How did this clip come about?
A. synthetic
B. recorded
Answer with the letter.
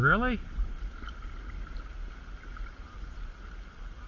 B